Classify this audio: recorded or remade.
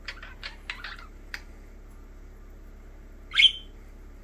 recorded